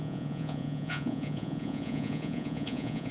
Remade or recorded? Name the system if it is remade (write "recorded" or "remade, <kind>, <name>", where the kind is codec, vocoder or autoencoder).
remade, vocoder, Vocos